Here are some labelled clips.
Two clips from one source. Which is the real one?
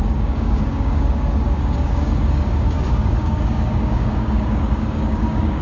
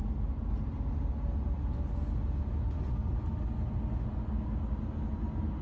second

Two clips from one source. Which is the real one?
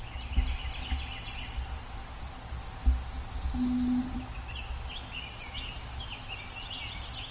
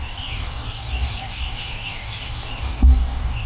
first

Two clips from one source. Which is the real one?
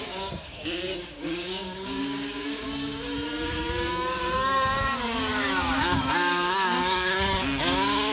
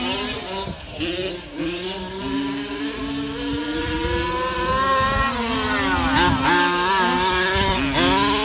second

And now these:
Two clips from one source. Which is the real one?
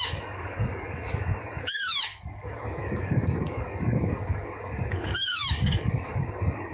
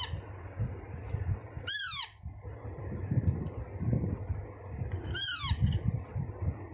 second